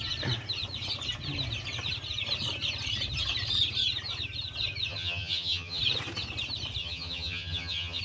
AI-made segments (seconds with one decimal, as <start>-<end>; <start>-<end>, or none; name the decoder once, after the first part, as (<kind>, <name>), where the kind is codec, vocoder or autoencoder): 4.9-5.8 (vocoder, HiFi-GAN); 6.8-8.0

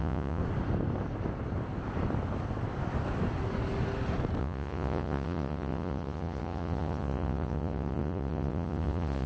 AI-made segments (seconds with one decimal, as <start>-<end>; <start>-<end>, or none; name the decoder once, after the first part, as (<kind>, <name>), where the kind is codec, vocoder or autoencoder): 0.0-0.4 (vocoder, Vocos); 4.4-9.3

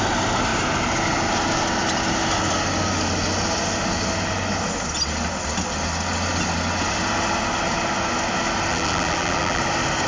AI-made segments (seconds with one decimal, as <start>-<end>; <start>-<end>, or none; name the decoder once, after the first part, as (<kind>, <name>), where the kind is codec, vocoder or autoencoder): 8.7-9.6 (vocoder, BigVGAN v2)

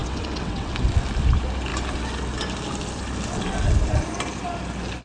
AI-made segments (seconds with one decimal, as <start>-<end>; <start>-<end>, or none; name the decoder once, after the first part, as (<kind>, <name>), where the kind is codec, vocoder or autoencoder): 0.0-0.7 (vocoder, WaveNeXt)

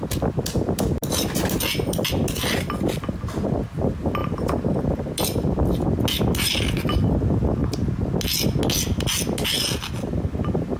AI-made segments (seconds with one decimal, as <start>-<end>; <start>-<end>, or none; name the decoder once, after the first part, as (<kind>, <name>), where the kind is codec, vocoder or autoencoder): none

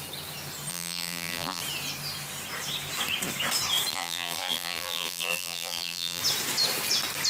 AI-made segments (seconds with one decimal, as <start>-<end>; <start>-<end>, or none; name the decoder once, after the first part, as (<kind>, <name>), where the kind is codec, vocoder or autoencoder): 0.7-1.6 (vocoder, BigVGAN v2); 3.9-6.2

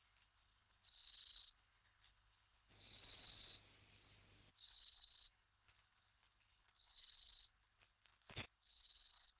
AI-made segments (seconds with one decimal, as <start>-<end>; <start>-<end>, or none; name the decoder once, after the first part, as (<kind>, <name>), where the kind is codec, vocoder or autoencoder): 0.0-2.7 (codec, HILCodec); 4.5-9.4